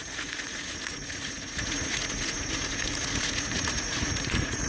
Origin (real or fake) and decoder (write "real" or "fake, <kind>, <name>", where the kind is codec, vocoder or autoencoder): fake, vocoder, Vocos